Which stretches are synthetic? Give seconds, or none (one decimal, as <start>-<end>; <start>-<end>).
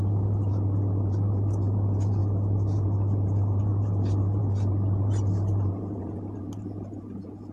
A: none